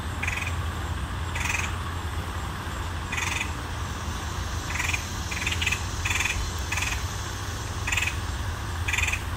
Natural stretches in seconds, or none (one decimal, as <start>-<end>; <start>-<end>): 0.0-2.1; 2.9-9.4